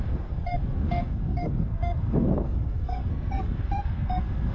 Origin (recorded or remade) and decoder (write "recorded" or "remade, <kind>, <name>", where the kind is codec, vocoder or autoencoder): remade, codec, SNAC